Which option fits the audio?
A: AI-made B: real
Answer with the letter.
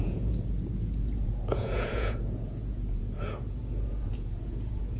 A